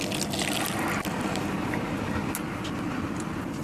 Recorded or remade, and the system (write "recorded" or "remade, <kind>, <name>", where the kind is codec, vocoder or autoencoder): recorded